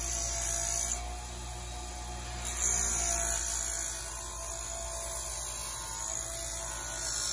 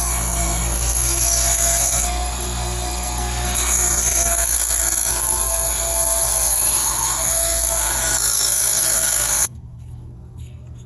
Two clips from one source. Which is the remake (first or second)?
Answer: second